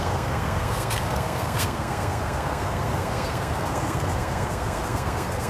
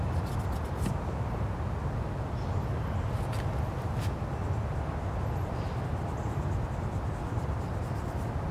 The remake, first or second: first